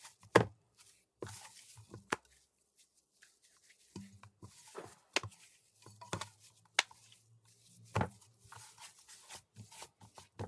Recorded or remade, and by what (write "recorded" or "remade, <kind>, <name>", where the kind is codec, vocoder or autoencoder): recorded